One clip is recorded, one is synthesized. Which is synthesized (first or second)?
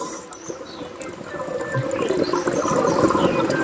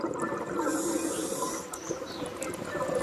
second